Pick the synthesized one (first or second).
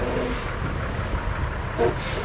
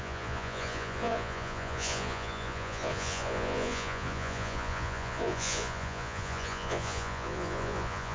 second